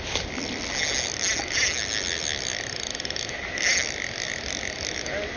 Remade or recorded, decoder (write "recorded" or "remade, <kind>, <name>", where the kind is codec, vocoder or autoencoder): recorded